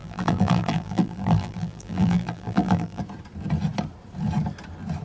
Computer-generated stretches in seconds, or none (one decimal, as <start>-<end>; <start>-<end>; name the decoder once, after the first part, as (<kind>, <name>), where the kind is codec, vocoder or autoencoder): 0.0-3.0 (vocoder, BigVGAN v2)